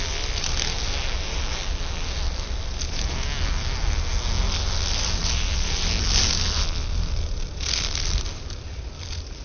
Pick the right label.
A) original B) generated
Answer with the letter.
A